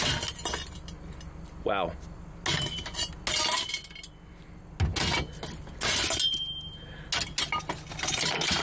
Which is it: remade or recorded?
recorded